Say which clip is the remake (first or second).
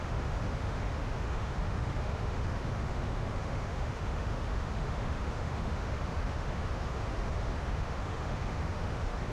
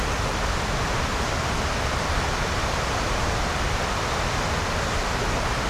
first